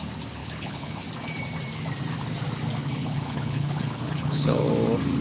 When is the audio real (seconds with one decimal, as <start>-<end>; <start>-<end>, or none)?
0.0-0.4; 1.0-2.8; 4.7-5.2